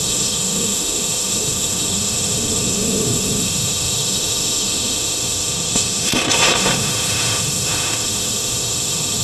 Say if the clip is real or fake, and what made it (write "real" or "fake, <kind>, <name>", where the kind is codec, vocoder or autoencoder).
fake, autoencoder, DAC-VAE